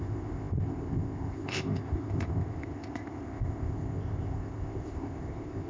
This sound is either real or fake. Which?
fake